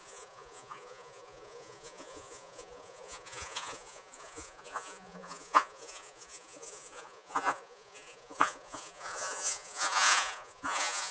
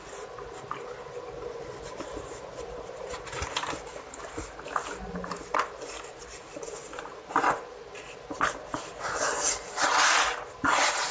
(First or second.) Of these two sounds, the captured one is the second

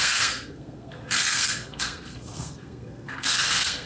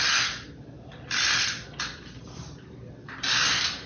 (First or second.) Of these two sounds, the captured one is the second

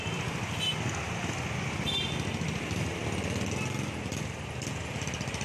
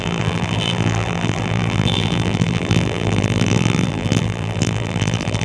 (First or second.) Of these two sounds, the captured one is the first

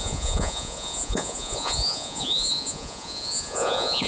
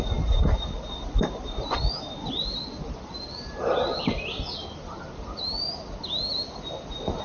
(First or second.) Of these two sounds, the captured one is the second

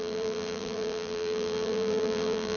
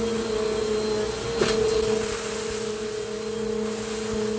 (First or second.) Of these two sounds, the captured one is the second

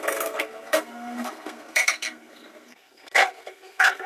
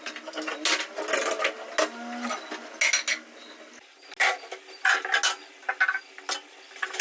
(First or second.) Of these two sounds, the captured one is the second